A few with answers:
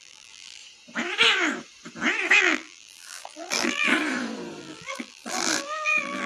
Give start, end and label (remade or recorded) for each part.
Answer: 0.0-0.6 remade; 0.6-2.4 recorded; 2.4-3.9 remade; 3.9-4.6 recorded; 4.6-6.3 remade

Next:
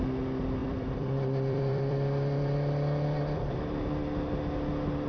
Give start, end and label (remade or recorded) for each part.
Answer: 0.0-0.6 recorded; 0.6-3.4 remade; 3.4-5.1 recorded

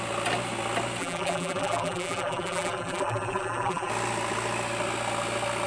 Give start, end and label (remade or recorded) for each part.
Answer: 0.0-1.0 recorded; 1.0-3.9 remade; 3.9-5.7 recorded

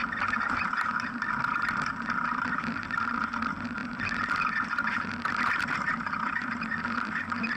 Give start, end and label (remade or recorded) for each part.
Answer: 0.0-1.7 recorded; 1.7-3.8 remade; 3.8-5.1 recorded; 5.1-7.6 remade